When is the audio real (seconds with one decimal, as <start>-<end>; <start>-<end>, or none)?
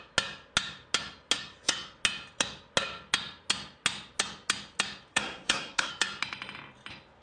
0.0-5.1; 5.9-7.2